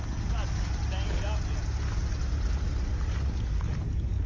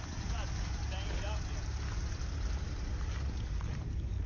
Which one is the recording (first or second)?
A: first